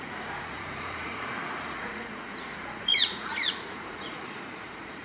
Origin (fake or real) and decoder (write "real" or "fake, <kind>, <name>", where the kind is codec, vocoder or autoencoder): fake, vocoder, Vocos